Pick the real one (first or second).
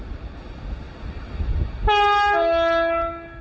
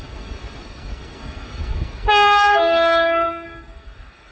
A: first